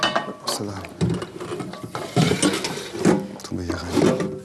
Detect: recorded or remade recorded